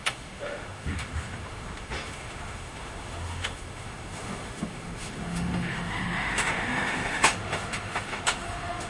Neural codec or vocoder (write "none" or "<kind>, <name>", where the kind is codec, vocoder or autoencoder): autoencoder, DAC-VAE